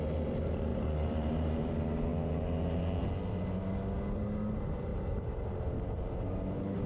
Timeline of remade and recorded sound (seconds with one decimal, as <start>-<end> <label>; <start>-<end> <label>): 0.0-0.7 recorded; 0.7-1.7 remade; 1.7-4.9 recorded; 4.9-5.5 remade; 5.5-6.9 recorded